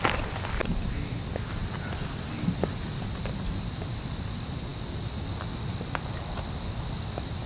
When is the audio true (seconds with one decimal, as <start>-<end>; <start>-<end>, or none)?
0.0-7.5